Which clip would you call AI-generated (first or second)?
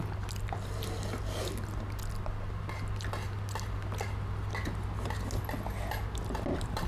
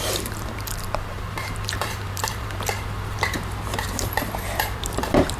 second